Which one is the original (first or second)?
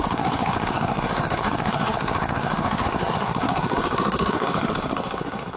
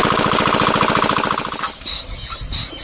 second